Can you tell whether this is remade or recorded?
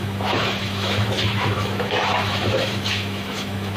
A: remade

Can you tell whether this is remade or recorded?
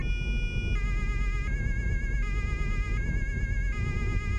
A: recorded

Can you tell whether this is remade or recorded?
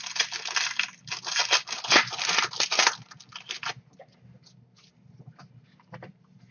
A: recorded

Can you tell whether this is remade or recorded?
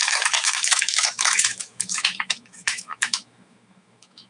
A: remade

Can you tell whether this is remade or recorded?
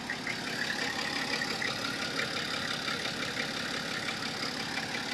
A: recorded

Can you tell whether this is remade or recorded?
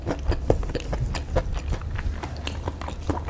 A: recorded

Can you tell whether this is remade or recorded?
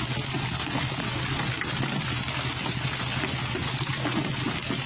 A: recorded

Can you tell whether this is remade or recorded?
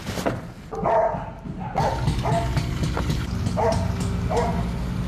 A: recorded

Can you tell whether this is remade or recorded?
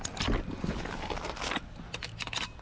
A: recorded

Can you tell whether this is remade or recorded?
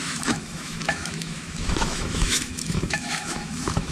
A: remade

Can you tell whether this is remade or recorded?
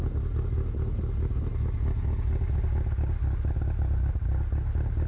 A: recorded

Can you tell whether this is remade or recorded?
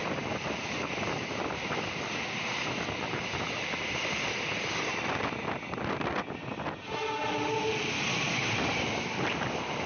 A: recorded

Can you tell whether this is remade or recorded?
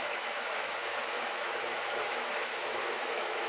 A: remade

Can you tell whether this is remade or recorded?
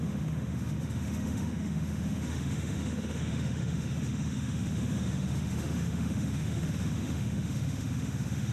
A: remade